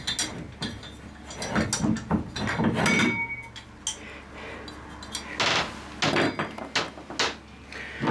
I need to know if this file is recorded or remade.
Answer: recorded